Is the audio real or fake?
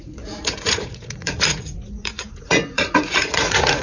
fake